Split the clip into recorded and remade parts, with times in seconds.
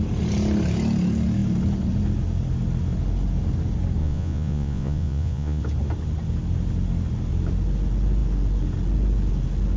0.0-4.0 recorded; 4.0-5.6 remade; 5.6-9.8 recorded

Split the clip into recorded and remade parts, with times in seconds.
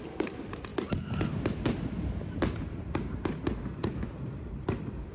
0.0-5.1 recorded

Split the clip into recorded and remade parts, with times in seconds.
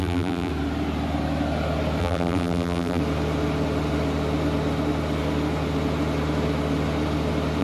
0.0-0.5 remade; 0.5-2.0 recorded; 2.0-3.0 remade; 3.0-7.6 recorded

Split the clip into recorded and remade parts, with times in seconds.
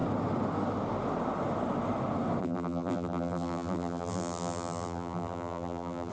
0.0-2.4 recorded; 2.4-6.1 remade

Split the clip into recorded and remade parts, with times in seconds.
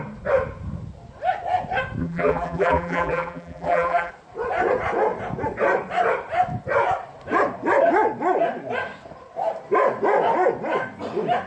0.0-2.0 recorded; 2.0-4.1 remade; 4.1-11.5 recorded